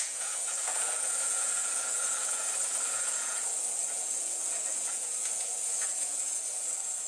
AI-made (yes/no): yes